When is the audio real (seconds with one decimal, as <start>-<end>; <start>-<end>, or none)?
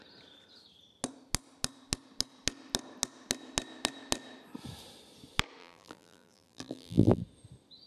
0.0-5.6; 7.2-7.9